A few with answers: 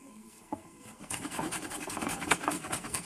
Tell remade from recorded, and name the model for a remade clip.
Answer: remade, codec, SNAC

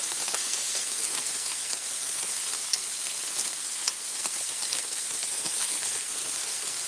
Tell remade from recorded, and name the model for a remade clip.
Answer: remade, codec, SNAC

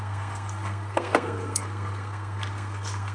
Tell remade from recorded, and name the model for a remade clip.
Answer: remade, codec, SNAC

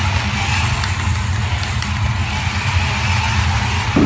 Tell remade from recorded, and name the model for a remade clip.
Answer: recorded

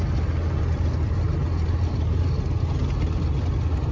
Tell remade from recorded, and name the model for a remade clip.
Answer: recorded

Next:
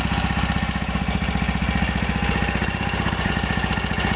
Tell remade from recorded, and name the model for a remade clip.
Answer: recorded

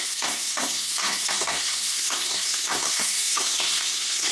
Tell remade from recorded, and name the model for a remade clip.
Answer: remade, codec, SNAC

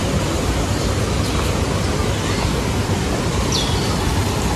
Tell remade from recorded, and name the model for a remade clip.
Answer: recorded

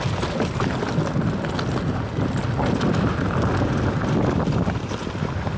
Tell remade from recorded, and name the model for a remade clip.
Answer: recorded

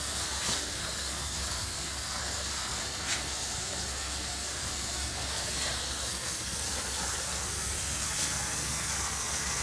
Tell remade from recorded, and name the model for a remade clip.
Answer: remade, codec, SNAC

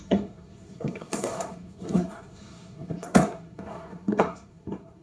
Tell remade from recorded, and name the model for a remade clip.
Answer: remade, codec, SNAC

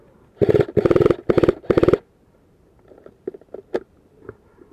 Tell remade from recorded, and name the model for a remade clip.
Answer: recorded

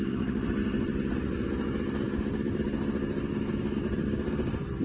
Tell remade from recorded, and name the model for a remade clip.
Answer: recorded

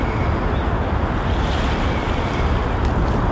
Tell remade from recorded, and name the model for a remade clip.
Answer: recorded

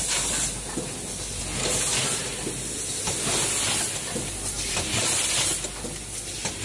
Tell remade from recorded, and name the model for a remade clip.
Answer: recorded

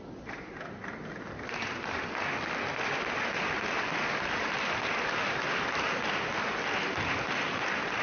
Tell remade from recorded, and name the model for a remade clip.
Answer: recorded